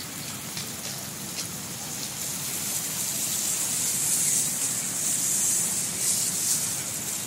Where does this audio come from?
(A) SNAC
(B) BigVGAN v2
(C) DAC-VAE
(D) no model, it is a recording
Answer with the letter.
D